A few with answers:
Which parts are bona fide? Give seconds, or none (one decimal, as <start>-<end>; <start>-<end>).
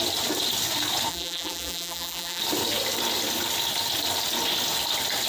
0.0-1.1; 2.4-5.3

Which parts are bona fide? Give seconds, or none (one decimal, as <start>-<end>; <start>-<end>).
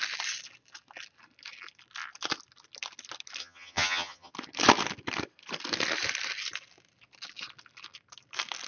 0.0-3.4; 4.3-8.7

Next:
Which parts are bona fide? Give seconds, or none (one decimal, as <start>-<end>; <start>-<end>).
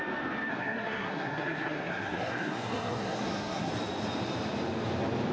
0.0-0.5; 3.7-5.3